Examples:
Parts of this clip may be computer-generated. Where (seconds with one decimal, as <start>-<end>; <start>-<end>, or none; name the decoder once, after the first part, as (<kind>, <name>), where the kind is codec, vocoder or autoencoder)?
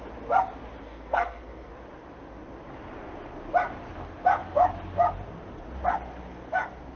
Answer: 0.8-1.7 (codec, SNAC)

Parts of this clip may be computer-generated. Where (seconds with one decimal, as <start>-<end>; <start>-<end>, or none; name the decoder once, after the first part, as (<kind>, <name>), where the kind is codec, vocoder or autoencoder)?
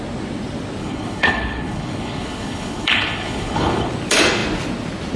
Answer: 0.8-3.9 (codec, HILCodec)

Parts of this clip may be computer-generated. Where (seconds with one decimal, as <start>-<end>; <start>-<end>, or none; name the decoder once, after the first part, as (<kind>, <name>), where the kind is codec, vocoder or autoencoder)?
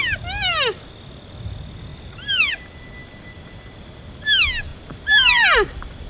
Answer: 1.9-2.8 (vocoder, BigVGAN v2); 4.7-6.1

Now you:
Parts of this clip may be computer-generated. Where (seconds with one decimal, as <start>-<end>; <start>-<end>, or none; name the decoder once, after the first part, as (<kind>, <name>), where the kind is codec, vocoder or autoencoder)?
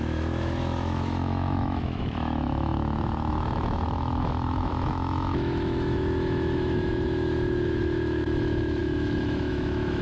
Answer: 0.0-10.0 (autoencoder, DAC-VAE)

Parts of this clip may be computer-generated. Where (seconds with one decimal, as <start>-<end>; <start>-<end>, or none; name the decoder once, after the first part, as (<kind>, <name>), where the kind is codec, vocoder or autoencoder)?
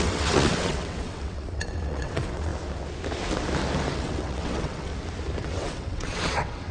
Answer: 0.0-2.5 (vocoder, WaveNeXt); 3.9-4.9; 5.4-6.7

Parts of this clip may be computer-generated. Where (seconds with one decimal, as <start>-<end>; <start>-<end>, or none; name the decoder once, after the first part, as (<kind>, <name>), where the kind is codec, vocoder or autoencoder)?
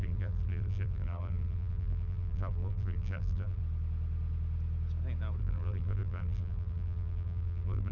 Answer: 0.0-3.6 (vocoder, BigVGAN v2); 5.4-7.9